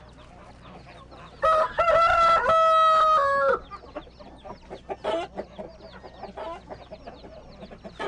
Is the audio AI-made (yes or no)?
no